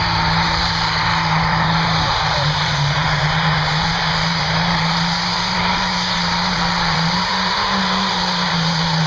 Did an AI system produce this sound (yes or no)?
yes